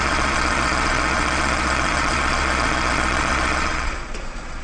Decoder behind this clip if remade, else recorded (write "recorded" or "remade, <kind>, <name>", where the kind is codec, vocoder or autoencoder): remade, vocoder, Vocos